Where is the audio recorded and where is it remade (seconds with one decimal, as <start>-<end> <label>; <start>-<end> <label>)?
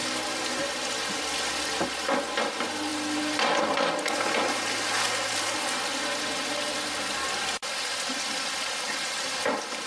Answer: 0.0-0.5 recorded; 0.5-2.9 remade; 2.9-8.1 recorded; 8.1-9.9 remade